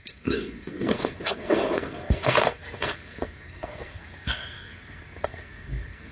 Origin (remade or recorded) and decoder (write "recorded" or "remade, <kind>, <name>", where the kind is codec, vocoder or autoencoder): remade, codec, SNAC